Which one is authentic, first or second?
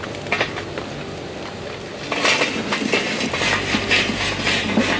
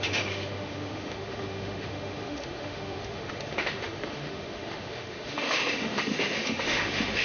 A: first